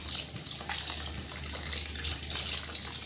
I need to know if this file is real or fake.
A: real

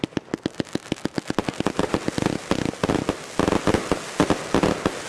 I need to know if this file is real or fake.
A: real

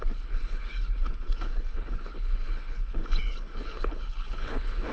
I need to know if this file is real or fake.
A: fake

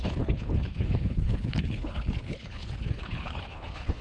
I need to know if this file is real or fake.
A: fake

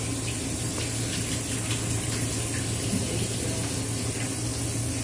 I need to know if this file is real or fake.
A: real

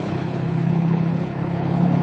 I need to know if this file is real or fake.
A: fake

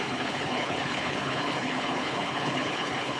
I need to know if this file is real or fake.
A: fake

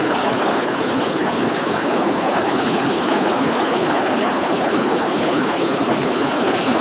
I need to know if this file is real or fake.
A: fake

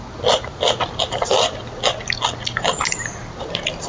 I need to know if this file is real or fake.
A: real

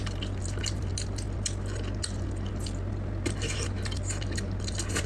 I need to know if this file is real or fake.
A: real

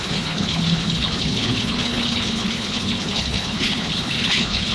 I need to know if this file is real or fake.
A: fake